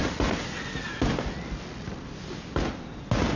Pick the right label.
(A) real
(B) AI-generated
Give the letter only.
A